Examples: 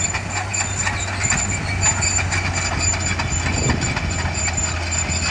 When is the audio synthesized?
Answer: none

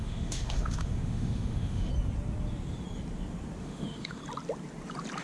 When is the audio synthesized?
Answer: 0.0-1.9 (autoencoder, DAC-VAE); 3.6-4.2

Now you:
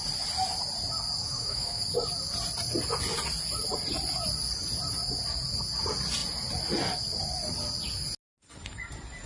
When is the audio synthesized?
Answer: 1.2-1.8 (autoencoder, DAC-VAE)

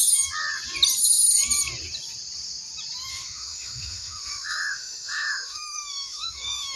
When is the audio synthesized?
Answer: 3.1-6.8 (autoencoder, DAC-VAE)

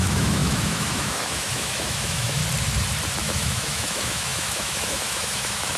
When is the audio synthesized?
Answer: 0.0-2.4 (autoencoder, DAC-VAE); 3.2-5.8